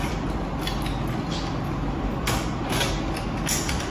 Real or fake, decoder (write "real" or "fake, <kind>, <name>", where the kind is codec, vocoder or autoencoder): real